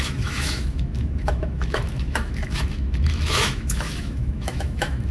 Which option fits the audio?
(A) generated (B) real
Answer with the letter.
A